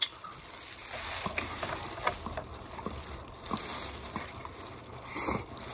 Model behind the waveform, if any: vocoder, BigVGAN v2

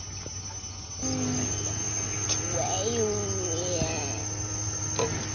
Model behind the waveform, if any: none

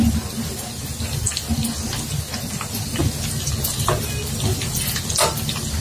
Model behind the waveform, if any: none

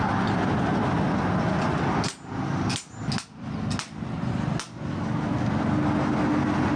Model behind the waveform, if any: none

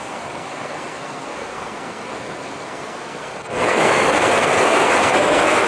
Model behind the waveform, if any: codec, SNAC